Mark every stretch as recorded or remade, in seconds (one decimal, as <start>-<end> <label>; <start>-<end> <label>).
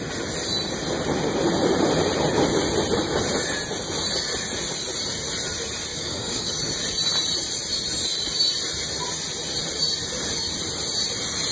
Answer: 0.0-5.9 recorded; 5.9-6.5 remade; 6.5-11.5 recorded